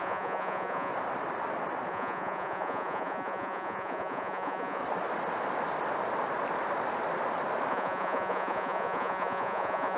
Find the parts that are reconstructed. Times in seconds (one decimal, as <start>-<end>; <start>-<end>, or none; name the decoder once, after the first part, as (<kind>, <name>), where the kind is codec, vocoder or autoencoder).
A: 0.0-0.9 (vocoder, Vocos); 1.9-4.8; 7.7-10.0